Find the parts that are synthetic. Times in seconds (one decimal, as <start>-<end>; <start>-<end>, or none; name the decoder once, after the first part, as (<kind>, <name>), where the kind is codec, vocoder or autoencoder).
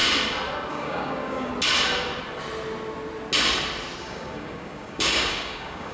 0.7-1.5 (codec, DAC); 4.0-5.9